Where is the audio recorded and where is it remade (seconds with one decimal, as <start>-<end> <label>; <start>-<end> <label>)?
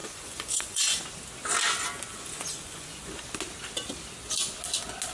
0.0-1.0 remade; 1.0-2.1 recorded; 2.1-3.1 remade; 3.1-5.1 recorded